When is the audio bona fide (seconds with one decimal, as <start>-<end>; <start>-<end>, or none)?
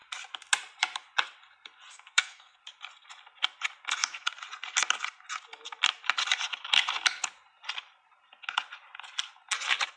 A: 0.0-1.9; 2.6-10.0